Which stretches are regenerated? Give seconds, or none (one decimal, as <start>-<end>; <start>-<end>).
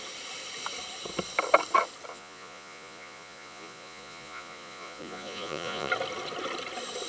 2.1-5.9